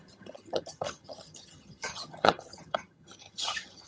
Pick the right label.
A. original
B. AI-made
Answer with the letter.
B